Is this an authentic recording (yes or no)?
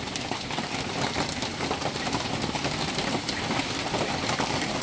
no